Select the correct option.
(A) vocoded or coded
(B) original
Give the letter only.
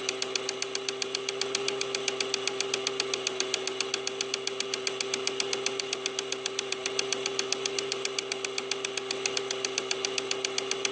B